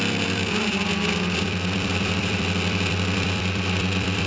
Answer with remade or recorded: remade